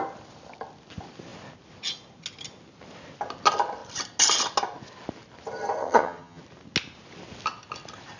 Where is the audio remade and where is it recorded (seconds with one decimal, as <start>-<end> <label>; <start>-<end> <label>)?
0.0-5.8 recorded; 5.8-6.4 remade; 6.4-8.2 recorded